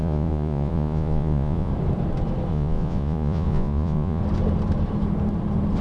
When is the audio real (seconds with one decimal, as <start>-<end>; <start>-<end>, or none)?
1.7-2.5; 4.2-5.8